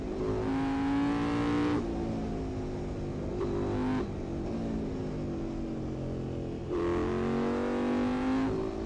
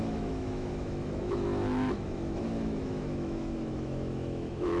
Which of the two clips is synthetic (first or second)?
second